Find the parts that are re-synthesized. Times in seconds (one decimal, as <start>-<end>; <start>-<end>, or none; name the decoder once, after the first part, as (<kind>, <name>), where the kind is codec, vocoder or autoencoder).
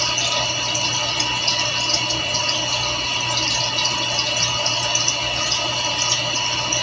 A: none